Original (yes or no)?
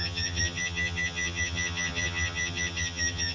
no